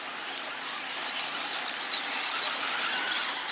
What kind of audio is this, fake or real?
real